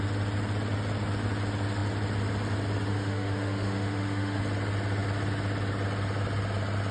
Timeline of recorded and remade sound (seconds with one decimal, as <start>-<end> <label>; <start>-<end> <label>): 0.0-2.9 recorded; 2.9-4.4 remade; 4.4-6.9 recorded